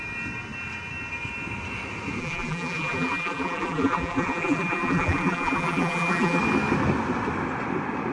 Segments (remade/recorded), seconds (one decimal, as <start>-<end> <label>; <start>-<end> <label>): 0.0-2.2 recorded; 2.2-6.4 remade; 6.4-8.1 recorded